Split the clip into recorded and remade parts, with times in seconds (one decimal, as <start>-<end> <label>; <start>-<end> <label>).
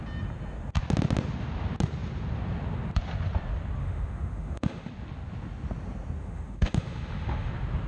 0.0-3.8 recorded; 3.8-4.9 remade; 4.9-6.2 recorded; 6.2-7.5 remade; 7.5-7.9 recorded